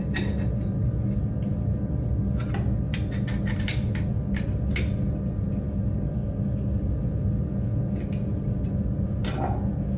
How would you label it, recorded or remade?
recorded